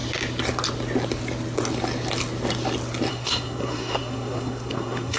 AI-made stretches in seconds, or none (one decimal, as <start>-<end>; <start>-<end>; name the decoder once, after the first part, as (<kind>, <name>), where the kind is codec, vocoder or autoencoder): 3.1-5.2 (codec, SNAC)